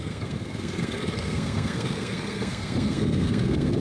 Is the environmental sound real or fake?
fake